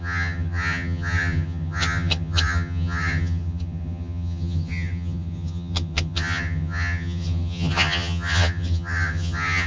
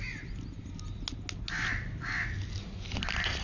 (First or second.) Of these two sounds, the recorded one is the second